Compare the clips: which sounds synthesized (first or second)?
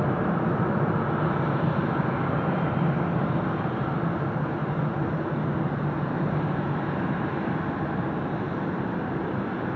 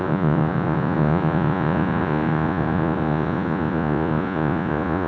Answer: second